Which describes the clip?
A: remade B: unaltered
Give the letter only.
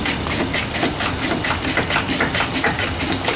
B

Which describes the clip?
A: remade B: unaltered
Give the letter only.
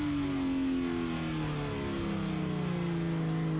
B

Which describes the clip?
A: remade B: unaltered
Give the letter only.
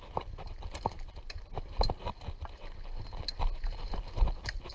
B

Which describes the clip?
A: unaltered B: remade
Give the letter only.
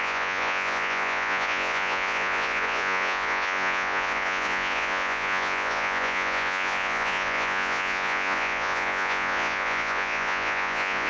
B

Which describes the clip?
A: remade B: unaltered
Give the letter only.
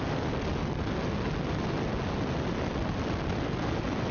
B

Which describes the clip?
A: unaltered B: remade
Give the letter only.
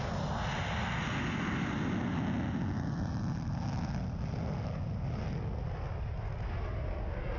A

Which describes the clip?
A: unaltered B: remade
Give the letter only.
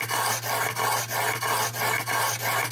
A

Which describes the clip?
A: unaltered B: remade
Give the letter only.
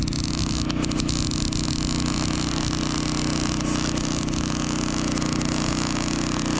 A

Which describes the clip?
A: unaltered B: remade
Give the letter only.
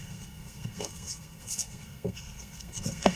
B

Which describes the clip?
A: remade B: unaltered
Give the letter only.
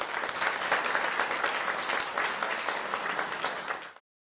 B